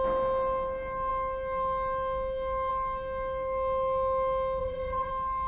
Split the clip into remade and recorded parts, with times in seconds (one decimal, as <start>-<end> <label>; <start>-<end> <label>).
0.0-4.6 recorded; 4.6-5.1 remade; 5.1-5.5 recorded